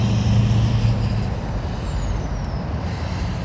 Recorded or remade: recorded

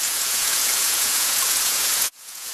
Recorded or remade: remade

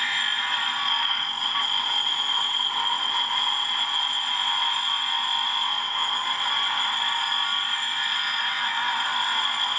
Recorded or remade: recorded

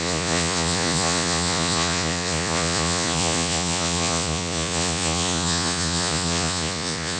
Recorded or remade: remade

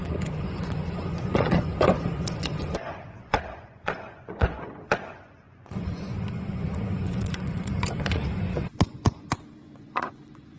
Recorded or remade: remade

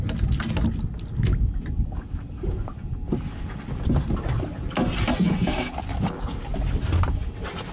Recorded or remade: recorded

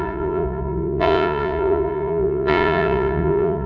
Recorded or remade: remade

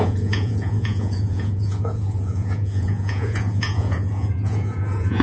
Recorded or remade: remade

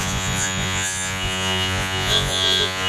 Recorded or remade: remade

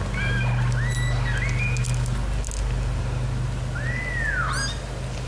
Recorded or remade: recorded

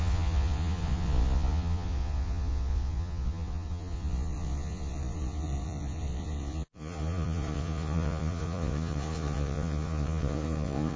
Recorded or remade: remade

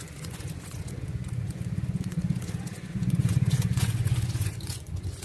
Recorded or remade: remade